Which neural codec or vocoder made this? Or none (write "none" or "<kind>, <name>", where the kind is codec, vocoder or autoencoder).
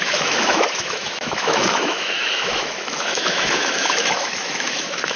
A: autoencoder, DAC-VAE